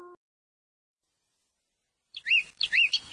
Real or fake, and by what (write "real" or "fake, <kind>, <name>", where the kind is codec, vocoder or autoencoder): real